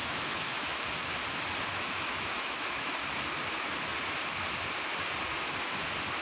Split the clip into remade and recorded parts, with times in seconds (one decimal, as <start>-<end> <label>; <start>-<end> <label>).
0.0-0.8 remade; 0.8-1.7 recorded; 1.7-2.9 remade; 2.9-6.2 recorded